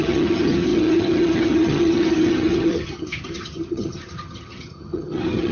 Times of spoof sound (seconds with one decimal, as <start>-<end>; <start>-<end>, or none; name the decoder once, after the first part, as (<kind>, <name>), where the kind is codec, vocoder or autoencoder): 0.0-5.5 (vocoder, HiFi-GAN)